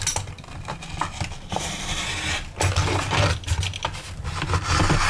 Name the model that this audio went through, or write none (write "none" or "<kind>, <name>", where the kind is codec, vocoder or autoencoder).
none